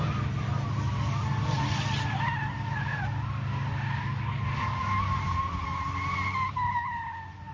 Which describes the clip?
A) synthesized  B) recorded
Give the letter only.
B